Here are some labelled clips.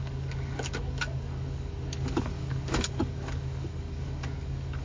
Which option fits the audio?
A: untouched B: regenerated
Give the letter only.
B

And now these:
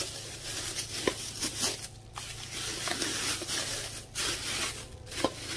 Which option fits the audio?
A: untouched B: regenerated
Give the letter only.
A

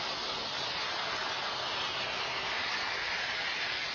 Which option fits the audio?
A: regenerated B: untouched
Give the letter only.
B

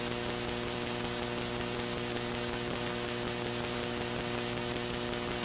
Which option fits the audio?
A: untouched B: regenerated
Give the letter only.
A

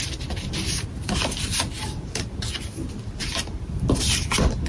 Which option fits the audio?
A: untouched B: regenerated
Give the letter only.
B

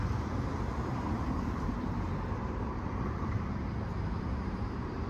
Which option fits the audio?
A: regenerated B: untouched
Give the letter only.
A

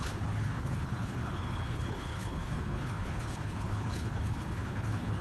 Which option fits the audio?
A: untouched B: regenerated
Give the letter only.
B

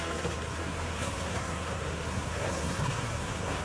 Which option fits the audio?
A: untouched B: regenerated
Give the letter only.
B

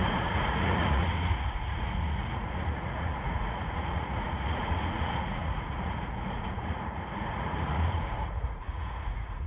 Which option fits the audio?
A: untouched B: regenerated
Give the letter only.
B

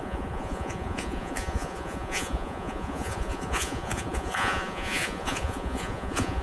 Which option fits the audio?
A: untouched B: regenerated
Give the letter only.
B